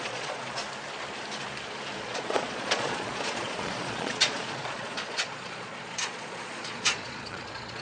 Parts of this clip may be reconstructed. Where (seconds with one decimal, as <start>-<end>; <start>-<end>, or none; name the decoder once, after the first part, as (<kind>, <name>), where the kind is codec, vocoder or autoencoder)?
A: 0.0-0.6 (vocoder, Vocos); 2.0-7.8